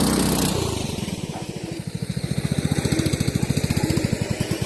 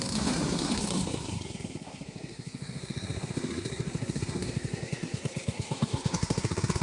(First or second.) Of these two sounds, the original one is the first